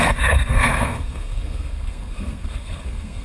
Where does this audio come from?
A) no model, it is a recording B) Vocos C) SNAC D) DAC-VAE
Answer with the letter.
C